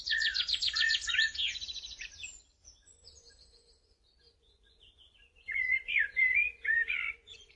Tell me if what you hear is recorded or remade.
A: remade